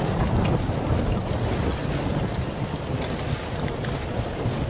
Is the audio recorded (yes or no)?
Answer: yes